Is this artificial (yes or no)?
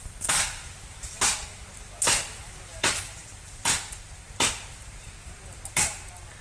yes